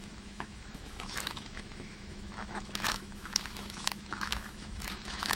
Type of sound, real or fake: fake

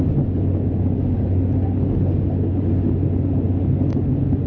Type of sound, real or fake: real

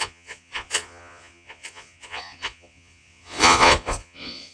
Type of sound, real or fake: fake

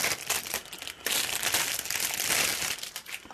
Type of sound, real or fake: real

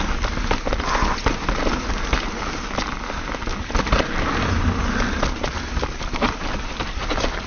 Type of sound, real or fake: real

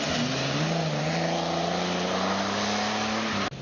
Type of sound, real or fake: real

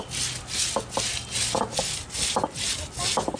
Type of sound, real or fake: real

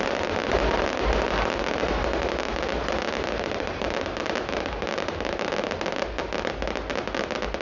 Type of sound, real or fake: real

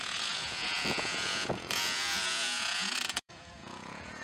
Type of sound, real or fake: fake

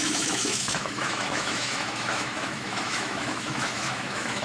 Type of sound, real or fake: fake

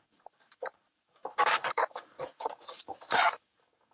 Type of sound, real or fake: fake